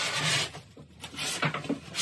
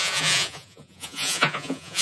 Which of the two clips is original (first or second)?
first